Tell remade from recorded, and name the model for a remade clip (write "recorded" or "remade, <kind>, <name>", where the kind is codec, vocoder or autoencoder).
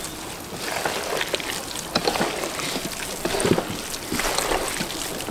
recorded